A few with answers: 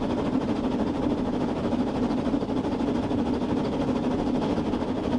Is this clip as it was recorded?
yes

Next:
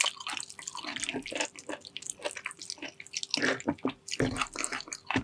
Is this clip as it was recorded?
yes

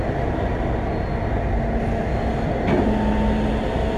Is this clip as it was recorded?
yes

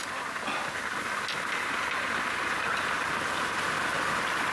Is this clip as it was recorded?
yes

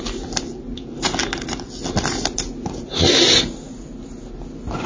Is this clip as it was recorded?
yes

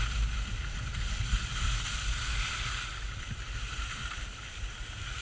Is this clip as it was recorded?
yes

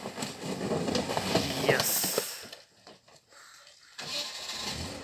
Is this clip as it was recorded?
yes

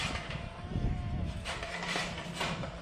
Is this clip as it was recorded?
no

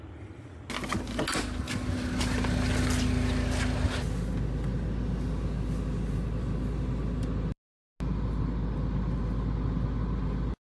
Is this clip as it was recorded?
yes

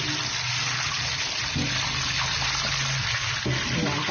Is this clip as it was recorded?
yes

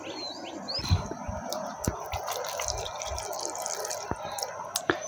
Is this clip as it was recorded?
yes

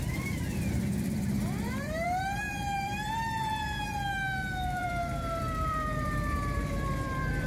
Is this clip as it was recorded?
no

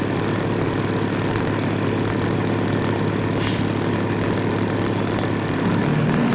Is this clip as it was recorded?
yes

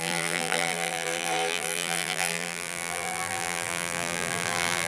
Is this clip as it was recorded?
no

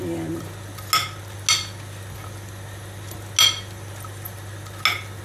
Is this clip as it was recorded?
yes